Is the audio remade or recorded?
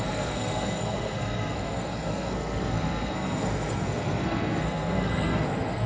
remade